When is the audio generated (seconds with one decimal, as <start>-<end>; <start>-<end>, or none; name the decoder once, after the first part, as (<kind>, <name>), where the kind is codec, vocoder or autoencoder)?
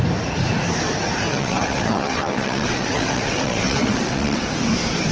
1.3-4.4 (vocoder, WaveNeXt)